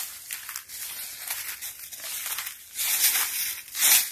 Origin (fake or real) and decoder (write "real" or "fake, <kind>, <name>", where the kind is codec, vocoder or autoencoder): real